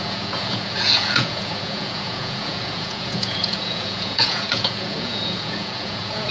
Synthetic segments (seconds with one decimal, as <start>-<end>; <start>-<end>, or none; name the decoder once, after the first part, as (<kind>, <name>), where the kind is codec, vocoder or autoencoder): 0.0-6.3 (vocoder, Vocos)